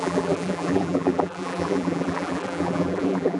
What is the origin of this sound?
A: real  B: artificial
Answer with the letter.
B